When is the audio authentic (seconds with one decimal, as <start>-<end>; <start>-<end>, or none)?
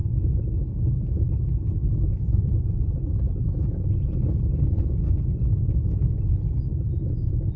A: 1.3-1.8; 2.7-7.6